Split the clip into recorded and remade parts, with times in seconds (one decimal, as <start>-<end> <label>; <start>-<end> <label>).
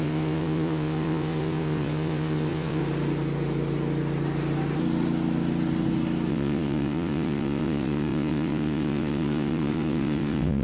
0.0-2.8 remade; 2.8-6.3 recorded; 6.3-10.6 remade